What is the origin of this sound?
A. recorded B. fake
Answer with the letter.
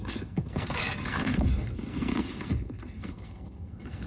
B